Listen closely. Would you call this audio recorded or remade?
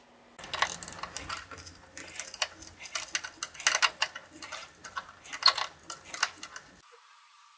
recorded